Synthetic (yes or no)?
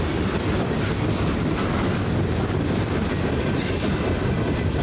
no